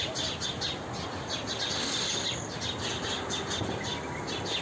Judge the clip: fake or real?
real